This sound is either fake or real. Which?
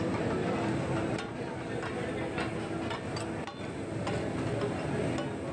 real